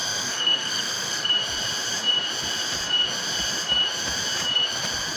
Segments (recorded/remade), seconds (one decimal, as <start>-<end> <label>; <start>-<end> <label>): 0.0-1.3 remade; 1.3-5.2 recorded